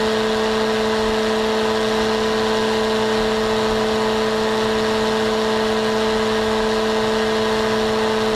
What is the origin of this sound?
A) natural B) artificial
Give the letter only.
A